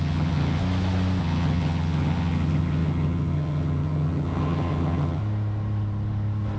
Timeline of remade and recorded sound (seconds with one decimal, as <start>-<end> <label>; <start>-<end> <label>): 0.0-0.6 remade; 0.6-1.2 recorded; 1.2-5.2 remade; 5.2-6.6 recorded